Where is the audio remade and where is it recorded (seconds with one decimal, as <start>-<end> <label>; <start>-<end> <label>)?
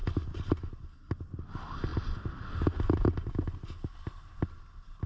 0.0-5.1 recorded